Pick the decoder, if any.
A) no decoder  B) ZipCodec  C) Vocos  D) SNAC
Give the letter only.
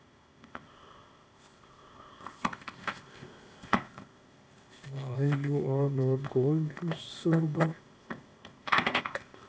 B